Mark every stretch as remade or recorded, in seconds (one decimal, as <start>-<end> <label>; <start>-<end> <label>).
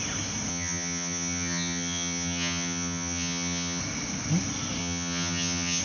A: 0.0-0.5 recorded; 0.5-3.8 remade; 3.8-4.8 recorded; 4.8-5.8 remade